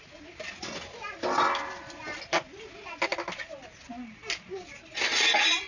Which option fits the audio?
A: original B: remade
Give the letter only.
A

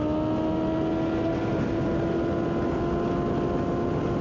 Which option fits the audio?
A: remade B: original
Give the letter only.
B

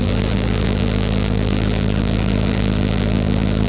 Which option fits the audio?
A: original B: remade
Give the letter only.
B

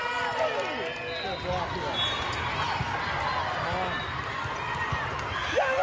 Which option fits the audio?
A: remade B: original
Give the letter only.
B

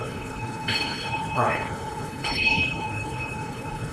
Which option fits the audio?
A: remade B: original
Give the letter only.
A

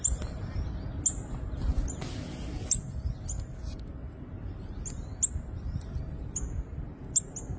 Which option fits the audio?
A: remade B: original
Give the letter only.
B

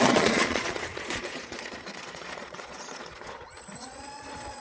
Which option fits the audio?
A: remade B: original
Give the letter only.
A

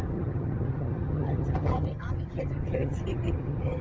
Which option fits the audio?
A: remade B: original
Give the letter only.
A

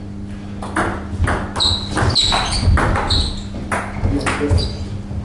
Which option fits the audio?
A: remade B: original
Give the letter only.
B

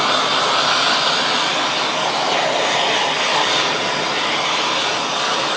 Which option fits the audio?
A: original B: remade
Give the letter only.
A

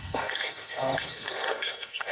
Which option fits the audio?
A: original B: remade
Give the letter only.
B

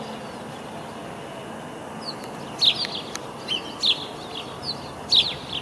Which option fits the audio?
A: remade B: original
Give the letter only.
B